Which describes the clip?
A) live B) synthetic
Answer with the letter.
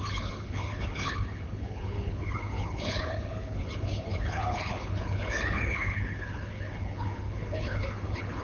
B